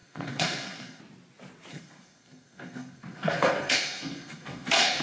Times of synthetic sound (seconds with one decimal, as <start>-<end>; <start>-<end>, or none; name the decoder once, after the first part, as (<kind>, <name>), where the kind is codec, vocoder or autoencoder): 0.0-1.0 (codec, SNAC); 1.7-5.0